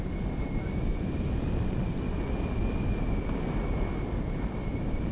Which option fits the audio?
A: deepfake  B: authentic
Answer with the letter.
B